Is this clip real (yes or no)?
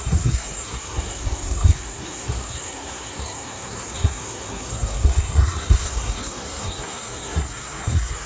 no